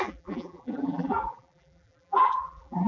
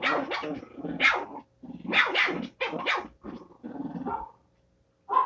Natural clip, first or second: second